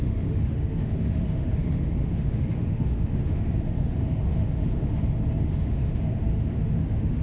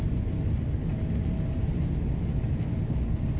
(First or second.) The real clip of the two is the second